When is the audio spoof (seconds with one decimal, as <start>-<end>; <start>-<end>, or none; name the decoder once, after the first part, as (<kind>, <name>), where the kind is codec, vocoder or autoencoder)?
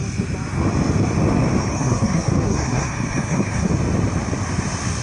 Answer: 1.7-3.7 (codec, SNAC)